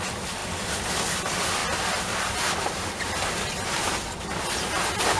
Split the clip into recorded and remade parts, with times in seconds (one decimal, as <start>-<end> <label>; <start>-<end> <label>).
0.0-1.6 recorded; 1.6-3.2 remade; 3.2-5.2 recorded